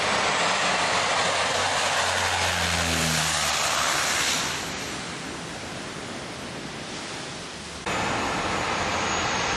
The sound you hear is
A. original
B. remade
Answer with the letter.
A